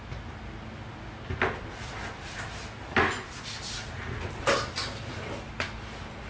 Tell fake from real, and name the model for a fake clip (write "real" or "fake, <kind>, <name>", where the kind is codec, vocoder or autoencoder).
real